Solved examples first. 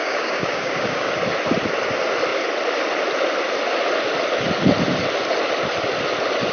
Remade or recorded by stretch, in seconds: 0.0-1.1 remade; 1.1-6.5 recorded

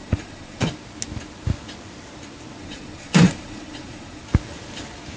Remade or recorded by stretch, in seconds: 0.0-0.7 remade; 0.7-2.6 recorded; 2.6-4.2 remade; 4.2-5.2 recorded

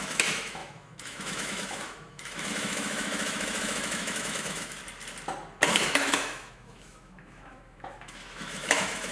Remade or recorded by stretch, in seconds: 0.0-4.8 remade; 4.8-5.7 recorded; 5.7-9.1 remade

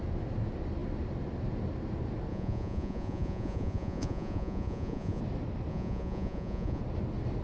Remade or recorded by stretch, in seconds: 0.0-2.3 recorded; 2.3-5.2 remade; 5.2-5.7 recorded; 5.7-6.8 remade; 6.8-7.4 recorded

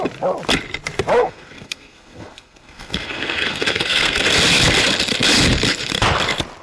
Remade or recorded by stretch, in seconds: 0.0-1.2 recorded; 1.2-4.2 remade; 4.2-6.6 recorded